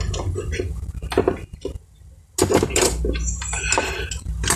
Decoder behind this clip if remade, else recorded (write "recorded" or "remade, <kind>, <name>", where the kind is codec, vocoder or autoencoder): recorded